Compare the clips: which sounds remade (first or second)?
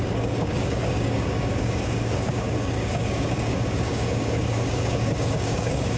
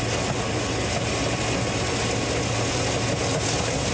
first